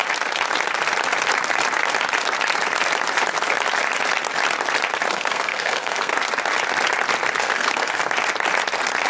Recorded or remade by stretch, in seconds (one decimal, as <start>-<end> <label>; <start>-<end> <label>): 0.0-5.1 recorded; 5.1-6.1 remade; 6.1-7.4 recorded; 7.4-8.0 remade; 8.0-9.1 recorded

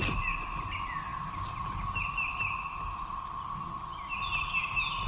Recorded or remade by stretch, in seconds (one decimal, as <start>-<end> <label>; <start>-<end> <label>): 0.0-5.1 recorded

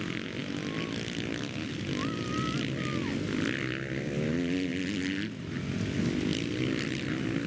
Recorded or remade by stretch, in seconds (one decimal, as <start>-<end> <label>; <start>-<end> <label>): 0.0-7.5 recorded

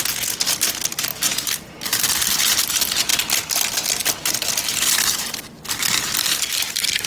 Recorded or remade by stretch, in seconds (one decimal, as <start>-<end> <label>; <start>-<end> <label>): 0.0-7.1 recorded